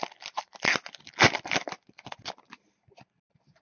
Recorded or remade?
recorded